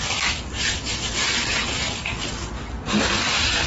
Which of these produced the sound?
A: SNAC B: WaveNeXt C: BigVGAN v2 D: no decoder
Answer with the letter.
D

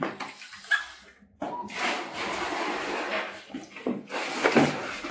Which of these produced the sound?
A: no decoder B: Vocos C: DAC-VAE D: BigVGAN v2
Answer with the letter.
A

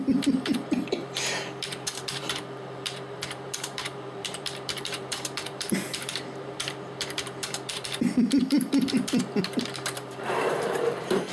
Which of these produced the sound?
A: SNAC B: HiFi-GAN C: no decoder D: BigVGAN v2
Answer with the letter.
D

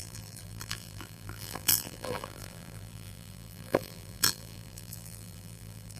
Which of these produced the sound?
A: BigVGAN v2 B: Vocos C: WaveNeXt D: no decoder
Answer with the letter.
A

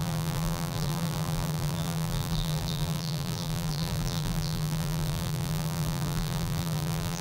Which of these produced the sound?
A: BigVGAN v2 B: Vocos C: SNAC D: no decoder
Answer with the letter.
A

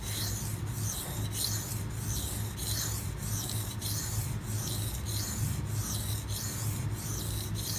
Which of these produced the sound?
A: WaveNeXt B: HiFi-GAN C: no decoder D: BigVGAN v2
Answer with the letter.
C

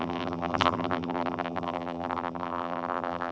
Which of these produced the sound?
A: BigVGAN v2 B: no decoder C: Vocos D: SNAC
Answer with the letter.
A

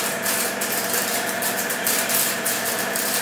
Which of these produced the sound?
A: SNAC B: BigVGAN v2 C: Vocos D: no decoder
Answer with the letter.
B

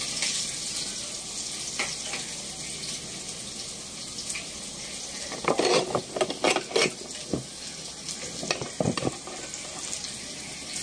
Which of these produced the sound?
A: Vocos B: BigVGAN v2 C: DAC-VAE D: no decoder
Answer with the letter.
D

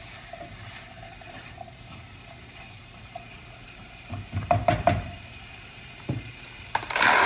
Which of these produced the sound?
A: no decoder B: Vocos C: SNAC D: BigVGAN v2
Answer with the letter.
D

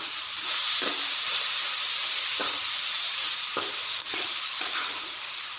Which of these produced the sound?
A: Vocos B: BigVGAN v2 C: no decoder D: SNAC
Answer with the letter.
B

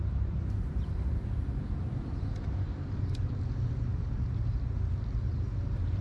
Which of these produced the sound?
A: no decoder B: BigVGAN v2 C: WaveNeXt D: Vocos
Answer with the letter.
B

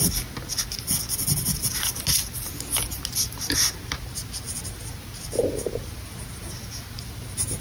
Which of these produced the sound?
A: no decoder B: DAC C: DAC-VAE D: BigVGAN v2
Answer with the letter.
A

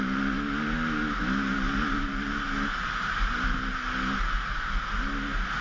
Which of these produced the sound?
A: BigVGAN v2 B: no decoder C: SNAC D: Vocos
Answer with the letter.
B